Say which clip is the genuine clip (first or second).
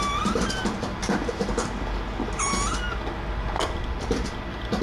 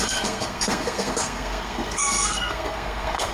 first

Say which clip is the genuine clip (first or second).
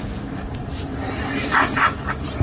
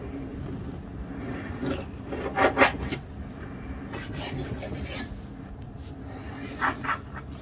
second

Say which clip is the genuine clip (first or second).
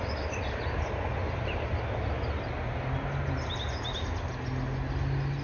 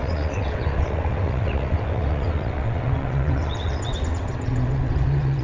first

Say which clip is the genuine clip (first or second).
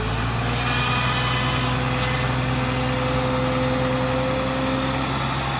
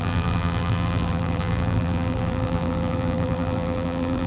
first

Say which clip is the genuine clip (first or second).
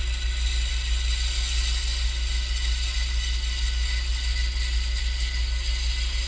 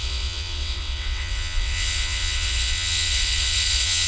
first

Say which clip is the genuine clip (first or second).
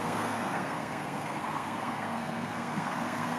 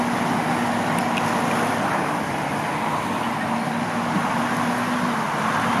second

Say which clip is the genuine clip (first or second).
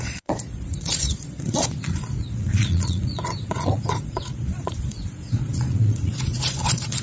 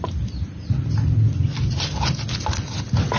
second